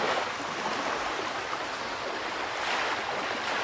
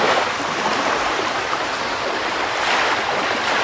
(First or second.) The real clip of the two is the first